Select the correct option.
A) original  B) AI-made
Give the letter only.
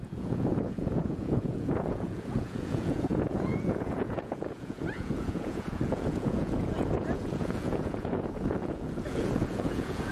B